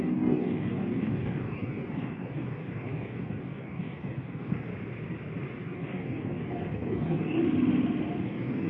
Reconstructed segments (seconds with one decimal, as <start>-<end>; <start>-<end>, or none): 0.0-4.7; 5.6-7.4; 8.2-8.7